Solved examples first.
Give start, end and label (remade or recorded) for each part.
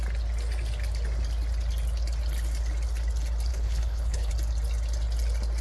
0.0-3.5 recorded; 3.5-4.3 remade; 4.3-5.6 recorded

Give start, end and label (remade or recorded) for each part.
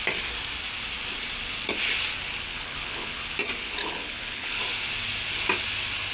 0.0-2.5 recorded; 2.5-3.2 remade; 3.2-3.8 recorded; 3.8-4.6 remade; 4.6-6.1 recorded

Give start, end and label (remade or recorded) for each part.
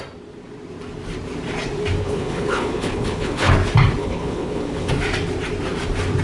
0.0-2.0 recorded; 2.0-3.5 remade; 3.5-4.0 recorded; 4.0-4.9 remade; 4.9-6.2 recorded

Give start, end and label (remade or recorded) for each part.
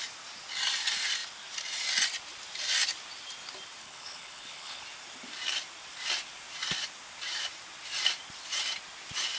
0.0-3.8 recorded; 3.8-4.8 remade; 4.8-9.4 recorded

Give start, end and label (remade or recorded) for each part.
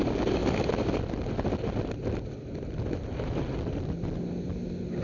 0.0-5.0 recorded